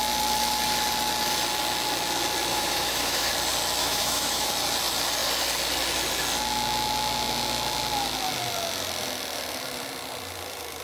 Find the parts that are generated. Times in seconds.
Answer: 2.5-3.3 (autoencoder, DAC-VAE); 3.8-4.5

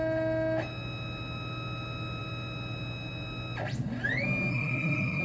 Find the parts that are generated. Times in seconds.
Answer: 4.5-5.2 (codec, SNAC)